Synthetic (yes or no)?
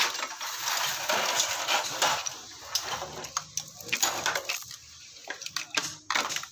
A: no